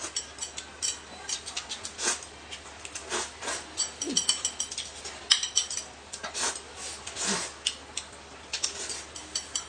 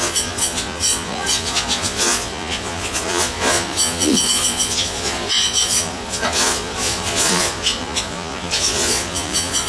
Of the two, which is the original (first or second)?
first